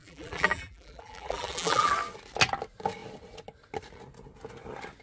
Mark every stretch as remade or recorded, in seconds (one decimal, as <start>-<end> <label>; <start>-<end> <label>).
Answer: 0.0-1.9 remade; 1.9-5.0 recorded